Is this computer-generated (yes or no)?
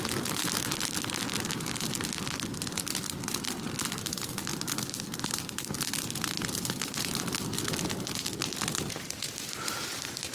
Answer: no